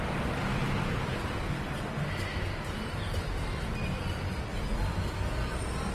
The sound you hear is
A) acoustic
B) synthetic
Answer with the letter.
B